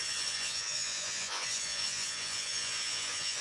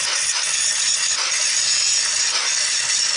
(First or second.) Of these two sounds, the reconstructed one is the first